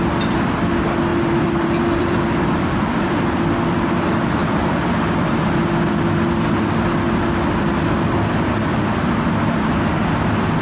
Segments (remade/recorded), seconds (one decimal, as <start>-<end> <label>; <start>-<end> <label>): 0.0-1.1 recorded; 1.1-2.2 remade; 2.2-10.6 recorded